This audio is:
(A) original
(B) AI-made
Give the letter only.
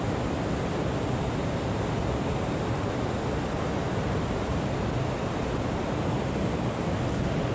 A